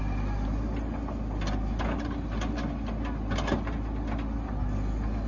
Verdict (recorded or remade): recorded